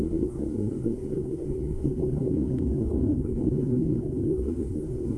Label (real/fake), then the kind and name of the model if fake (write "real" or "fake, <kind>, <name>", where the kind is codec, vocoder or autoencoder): fake, codec, SNAC